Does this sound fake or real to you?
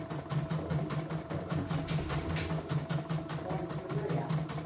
real